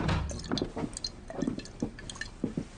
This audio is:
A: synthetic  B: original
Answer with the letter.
B